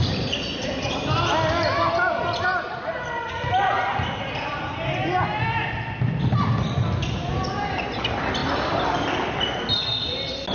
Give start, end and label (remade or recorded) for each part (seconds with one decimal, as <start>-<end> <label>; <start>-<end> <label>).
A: 0.0-10.5 recorded